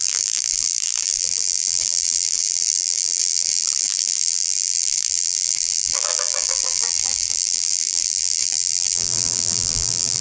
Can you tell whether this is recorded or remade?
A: remade